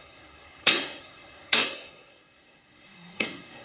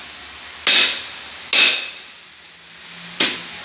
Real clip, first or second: second